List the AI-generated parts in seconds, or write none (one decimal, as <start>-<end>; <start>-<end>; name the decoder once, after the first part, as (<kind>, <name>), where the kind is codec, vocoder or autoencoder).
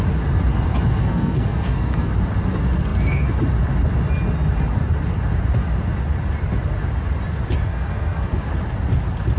1.0-2.1 (codec, SNAC); 7.7-8.5